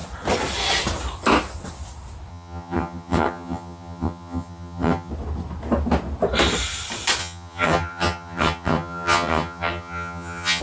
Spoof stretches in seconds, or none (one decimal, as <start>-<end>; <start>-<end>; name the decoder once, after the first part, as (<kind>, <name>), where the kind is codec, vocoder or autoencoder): 2.3-5.1 (vocoder, HiFi-GAN); 7.2-10.6